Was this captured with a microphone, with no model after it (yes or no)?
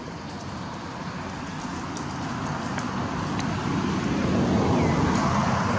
yes